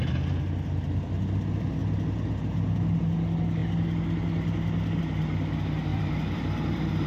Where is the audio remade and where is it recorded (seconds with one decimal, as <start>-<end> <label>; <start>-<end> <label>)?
0.0-5.9 recorded; 5.9-7.1 remade